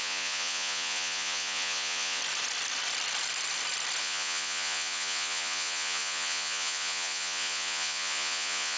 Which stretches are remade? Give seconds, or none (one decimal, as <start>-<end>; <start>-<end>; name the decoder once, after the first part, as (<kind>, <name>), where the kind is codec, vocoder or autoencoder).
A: 0.0-2.2 (vocoder, Vocos); 4.0-8.8